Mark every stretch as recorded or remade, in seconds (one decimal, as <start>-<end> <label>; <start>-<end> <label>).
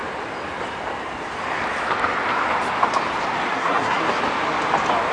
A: 0.0-3.5 recorded; 3.5-4.0 remade; 4.0-5.1 recorded